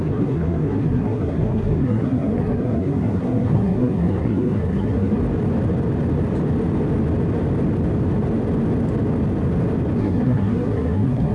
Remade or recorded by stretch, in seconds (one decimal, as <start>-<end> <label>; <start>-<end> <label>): 0.0-5.2 remade; 5.2-10.0 recorded; 10.0-11.3 remade